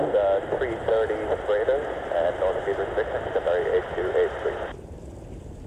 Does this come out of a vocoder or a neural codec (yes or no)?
no